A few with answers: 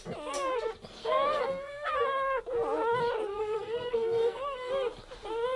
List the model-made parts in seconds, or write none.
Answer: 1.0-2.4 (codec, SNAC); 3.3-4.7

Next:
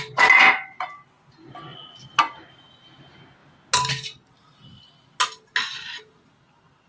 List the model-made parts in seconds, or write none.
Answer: none

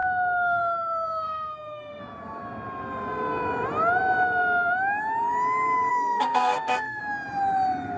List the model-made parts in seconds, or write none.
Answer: 0.0-2.0 (codec, SNAC); 5.9-7.0